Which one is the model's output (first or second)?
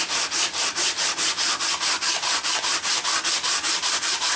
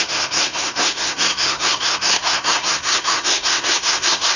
second